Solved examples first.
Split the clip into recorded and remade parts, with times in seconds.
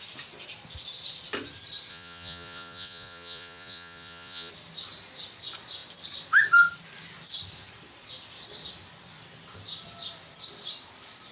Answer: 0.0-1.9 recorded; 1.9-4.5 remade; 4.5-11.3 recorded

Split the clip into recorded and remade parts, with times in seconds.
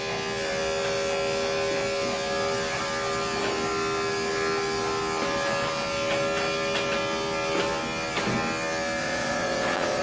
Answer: 0.0-9.0 recorded; 9.0-10.0 remade